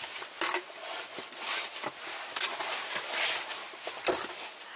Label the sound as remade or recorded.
recorded